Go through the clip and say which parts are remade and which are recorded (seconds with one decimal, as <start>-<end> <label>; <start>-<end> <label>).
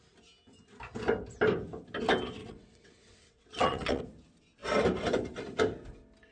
0.0-2.4 recorded; 2.4-4.0 remade; 4.0-6.3 recorded